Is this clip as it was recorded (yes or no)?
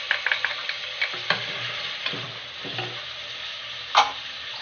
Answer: yes